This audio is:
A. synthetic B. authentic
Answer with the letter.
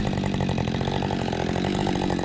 B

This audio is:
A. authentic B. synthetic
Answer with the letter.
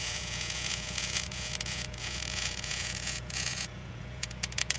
B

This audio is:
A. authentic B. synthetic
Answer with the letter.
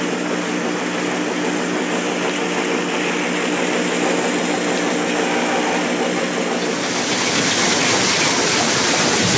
A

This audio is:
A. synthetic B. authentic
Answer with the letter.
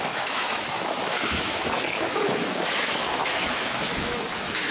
A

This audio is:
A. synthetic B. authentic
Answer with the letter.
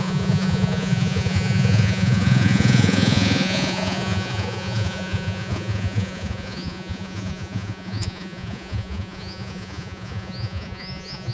A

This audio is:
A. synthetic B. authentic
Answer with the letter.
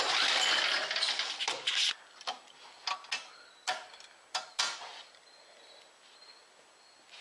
B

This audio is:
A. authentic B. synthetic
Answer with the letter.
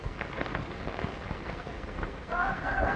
B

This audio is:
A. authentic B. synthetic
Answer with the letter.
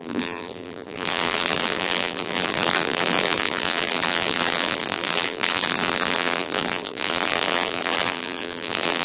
B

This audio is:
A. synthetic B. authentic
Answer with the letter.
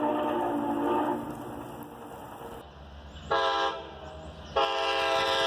B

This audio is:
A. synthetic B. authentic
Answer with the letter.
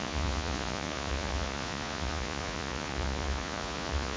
A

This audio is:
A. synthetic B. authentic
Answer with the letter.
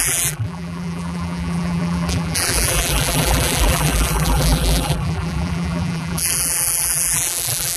A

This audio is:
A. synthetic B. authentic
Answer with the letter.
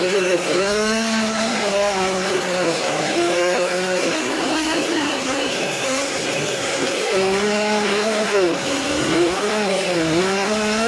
A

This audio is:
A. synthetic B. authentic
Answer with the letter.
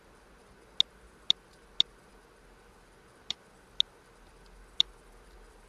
B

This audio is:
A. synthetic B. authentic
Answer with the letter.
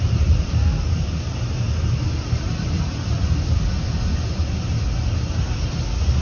B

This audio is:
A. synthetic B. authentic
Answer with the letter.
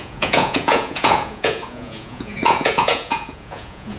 A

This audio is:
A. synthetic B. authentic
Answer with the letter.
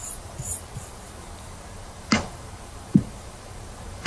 A